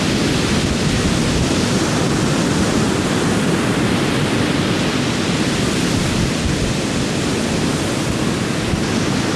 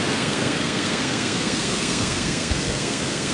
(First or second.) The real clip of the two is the first